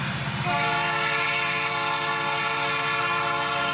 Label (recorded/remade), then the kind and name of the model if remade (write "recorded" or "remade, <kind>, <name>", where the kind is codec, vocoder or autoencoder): recorded